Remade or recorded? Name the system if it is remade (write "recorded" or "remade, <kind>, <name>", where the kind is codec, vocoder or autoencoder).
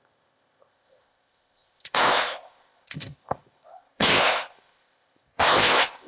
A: remade, codec, ZipCodec